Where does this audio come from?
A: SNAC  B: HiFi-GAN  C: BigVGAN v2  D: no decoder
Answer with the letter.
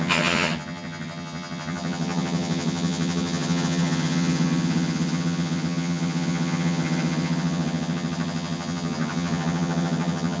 B